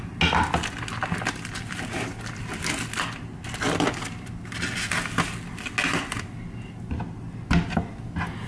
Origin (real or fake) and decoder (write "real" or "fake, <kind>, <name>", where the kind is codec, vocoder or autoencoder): real